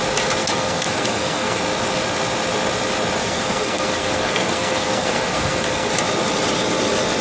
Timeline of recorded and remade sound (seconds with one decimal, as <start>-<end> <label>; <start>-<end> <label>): 0.0-0.4 recorded; 0.4-1.6 remade; 1.6-3.2 recorded; 3.2-5.9 remade; 5.9-7.2 recorded